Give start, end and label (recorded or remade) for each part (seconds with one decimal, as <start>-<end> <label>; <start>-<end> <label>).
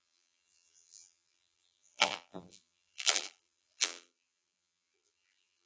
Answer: 0.0-5.7 remade